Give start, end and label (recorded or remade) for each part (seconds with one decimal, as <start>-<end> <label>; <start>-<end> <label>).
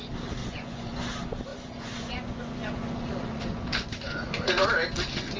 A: 0.0-0.4 recorded; 0.4-1.1 remade; 1.1-1.5 recorded; 1.5-4.7 remade; 4.7-5.4 recorded